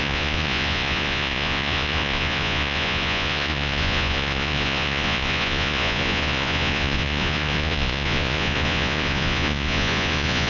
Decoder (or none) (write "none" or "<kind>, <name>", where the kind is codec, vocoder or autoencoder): vocoder, Vocos